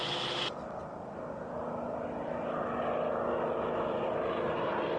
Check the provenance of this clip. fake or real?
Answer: real